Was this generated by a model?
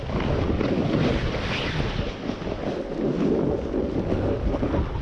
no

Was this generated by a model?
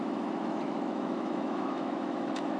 yes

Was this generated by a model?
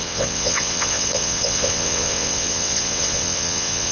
yes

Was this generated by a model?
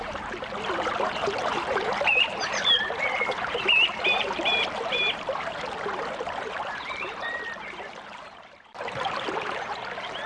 yes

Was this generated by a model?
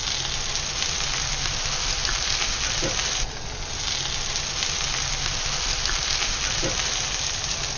no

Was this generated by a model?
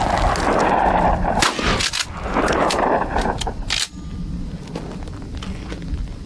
no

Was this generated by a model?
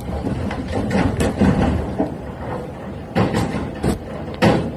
yes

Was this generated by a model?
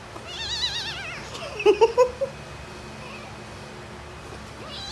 no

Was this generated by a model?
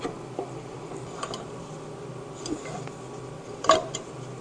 no